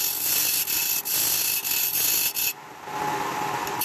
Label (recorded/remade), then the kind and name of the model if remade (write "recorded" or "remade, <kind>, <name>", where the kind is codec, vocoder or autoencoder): recorded